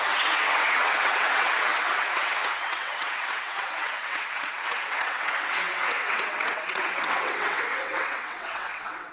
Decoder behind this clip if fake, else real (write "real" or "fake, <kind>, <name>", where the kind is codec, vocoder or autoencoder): fake, vocoder, WaveNeXt